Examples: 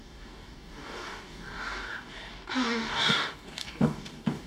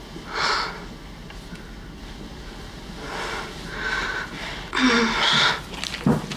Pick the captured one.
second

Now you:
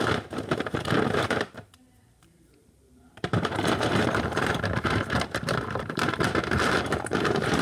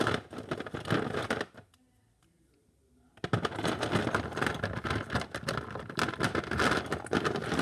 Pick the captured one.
second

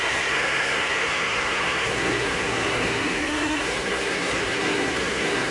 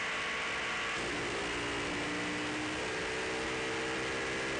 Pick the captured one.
second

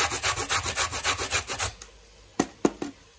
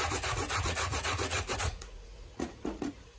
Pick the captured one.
first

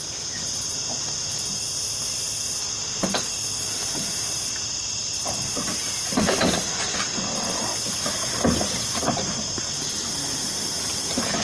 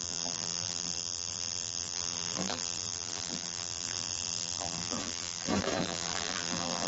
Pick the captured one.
first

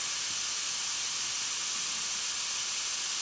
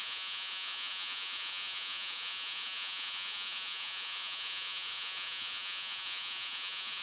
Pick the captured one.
first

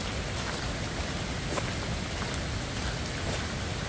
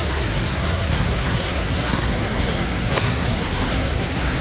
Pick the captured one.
first